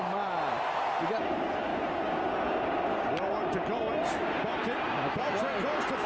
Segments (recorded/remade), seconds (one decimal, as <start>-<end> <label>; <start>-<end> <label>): 0.0-6.1 recorded